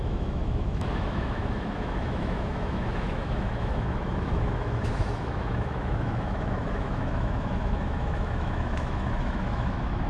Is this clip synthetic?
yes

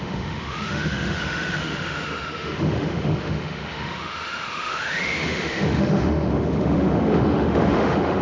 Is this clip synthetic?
yes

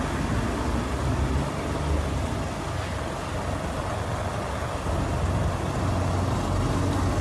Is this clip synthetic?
no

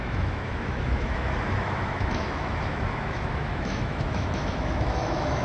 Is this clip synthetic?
yes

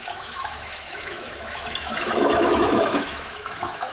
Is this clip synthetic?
yes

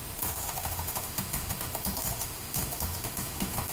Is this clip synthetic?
yes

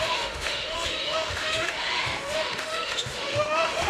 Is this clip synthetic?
yes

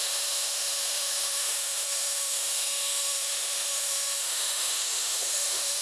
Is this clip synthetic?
yes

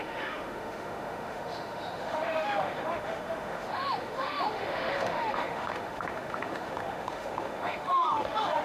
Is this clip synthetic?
yes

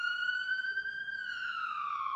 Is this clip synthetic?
yes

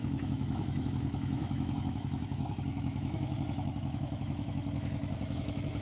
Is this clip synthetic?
yes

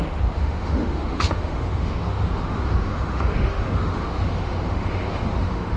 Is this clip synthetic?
yes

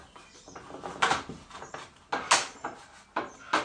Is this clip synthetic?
no